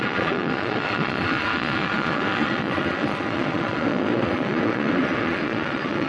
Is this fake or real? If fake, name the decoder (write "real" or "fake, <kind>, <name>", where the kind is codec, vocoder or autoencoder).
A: fake, vocoder, Vocos